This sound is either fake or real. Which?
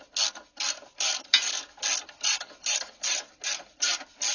real